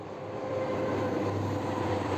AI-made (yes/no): yes